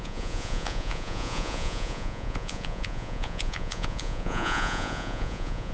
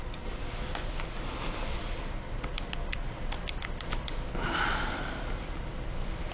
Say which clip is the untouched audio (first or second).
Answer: second